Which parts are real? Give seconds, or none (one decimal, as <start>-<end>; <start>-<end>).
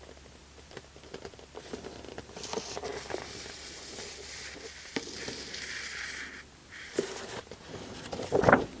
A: 0.0-0.4; 4.9-6.6; 7.4-8.8